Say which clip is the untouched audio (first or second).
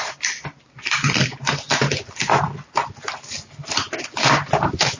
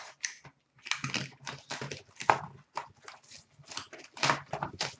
second